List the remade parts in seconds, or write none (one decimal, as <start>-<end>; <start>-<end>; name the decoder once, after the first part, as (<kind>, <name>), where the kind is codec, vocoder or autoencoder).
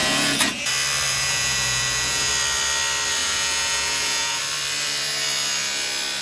0.0-0.7 (vocoder, Vocos); 1.1-2.3; 3.2-4.4